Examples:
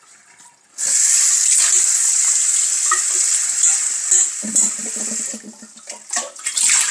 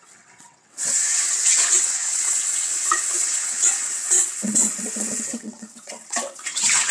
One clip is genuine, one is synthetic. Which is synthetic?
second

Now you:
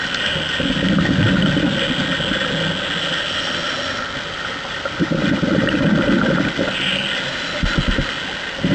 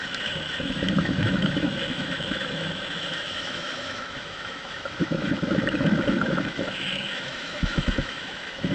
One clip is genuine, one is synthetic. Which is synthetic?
second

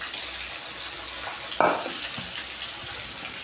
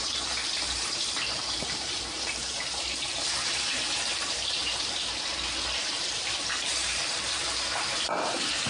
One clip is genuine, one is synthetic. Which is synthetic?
second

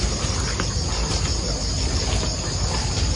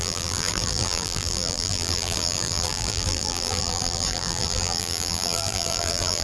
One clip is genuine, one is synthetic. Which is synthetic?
second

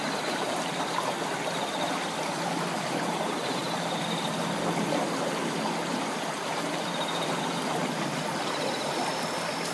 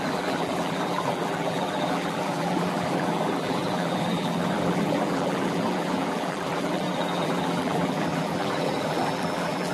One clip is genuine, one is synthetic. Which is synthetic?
second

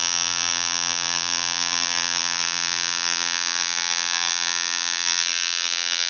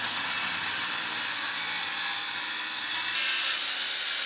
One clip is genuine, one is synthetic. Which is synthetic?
first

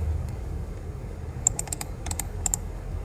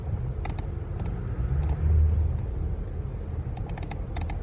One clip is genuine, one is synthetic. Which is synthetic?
first